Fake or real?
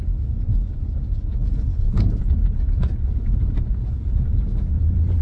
fake